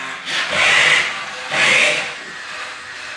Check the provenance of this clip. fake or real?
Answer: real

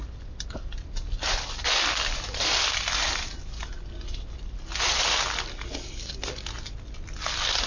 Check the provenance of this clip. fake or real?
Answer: real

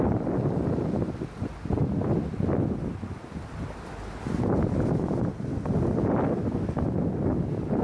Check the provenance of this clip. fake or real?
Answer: real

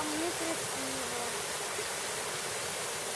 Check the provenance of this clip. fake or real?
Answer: real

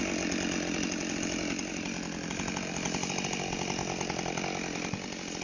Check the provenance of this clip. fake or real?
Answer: real